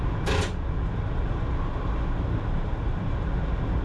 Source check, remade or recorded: recorded